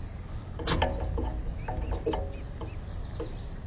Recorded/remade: recorded